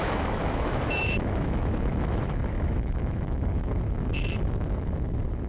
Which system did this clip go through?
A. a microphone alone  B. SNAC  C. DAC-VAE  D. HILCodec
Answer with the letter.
C